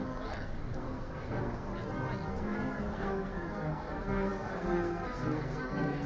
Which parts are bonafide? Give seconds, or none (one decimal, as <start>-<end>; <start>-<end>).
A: 1.7-2.3